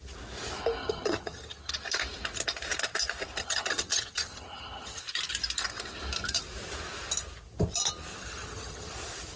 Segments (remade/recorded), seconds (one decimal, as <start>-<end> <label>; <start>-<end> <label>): 0.0-0.8 recorded; 0.8-1.7 remade; 1.7-3.4 recorded; 3.4-5.0 remade; 5.0-8.1 recorded; 8.1-8.9 remade; 8.9-9.4 recorded